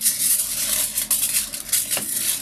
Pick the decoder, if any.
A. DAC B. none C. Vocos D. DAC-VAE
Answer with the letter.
B